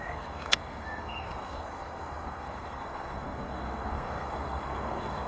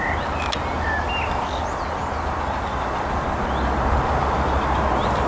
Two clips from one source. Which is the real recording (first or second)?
second